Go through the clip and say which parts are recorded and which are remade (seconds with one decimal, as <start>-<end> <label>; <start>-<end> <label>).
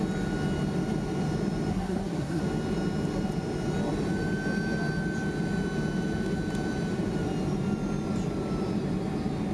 0.0-1.7 recorded; 1.7-2.4 remade; 2.4-9.5 recorded